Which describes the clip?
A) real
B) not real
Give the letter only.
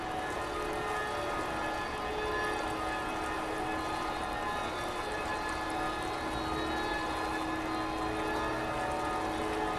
A